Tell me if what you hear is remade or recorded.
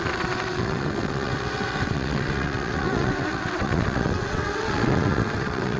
remade